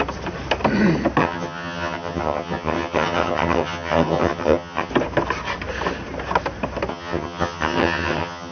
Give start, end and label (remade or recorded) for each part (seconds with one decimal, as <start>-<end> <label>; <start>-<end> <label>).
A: 0.0-1.2 recorded; 1.2-4.9 remade; 4.9-6.9 recorded; 6.9-8.5 remade